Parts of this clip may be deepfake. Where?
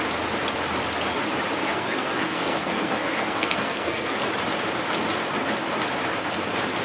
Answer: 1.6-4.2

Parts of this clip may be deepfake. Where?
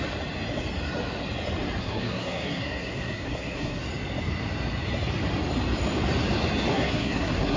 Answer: 1.8-3.8; 6.7-7.6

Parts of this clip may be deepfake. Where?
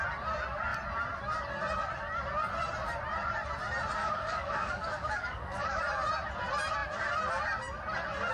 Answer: 4.0-5.8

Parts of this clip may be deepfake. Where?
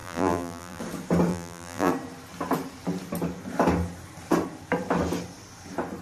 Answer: 0.0-0.8; 1.3-1.9